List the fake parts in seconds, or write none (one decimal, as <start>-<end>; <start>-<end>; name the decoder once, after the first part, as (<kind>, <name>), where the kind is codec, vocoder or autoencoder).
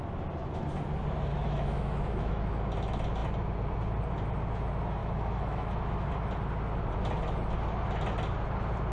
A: 1.3-2.4 (autoencoder, DAC-VAE); 5.0-6.1